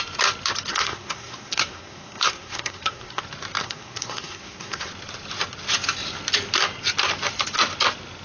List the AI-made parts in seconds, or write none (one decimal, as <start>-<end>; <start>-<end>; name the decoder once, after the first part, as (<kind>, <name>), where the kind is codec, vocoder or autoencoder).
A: 0.7-3.2 (codec, SNAC); 3.6-4.9